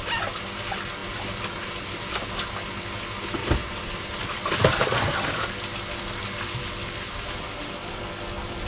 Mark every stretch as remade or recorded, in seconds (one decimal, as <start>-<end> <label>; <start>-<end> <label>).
0.0-3.4 recorded; 3.4-5.5 remade; 5.5-7.8 recorded; 7.8-8.7 remade